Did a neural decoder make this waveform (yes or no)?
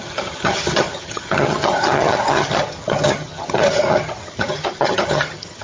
yes